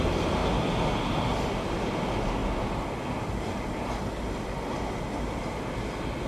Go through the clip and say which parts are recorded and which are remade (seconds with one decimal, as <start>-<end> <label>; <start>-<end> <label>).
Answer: 0.0-0.4 remade; 0.4-1.7 recorded; 1.7-2.4 remade; 2.4-6.3 recorded